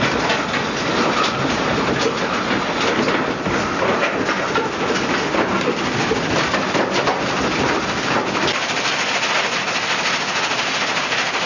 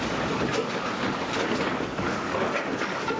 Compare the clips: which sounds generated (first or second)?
second